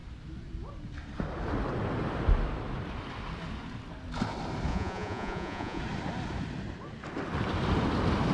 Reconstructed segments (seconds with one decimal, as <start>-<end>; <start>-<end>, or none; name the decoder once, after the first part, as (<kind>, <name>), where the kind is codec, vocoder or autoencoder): 4.7-5.8 (vocoder, Vocos)